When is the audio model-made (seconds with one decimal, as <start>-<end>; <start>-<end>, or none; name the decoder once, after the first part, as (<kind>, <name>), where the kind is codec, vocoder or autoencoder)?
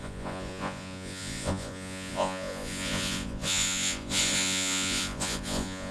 0.0-5.9 (vocoder, Vocos)